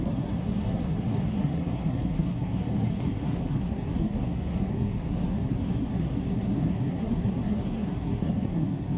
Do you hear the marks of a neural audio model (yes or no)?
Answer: yes